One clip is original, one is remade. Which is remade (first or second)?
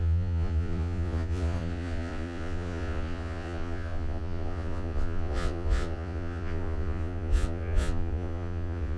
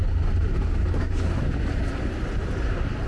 first